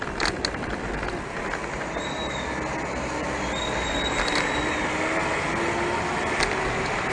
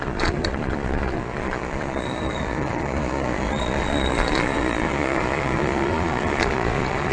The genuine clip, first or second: first